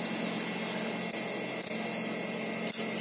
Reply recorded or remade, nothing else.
recorded